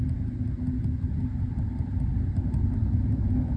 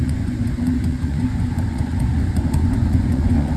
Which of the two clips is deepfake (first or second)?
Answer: second